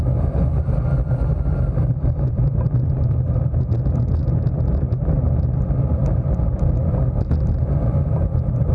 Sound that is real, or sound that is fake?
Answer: real